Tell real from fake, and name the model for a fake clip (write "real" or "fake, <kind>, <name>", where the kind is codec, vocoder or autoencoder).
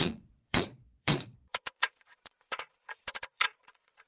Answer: fake, vocoder, Vocos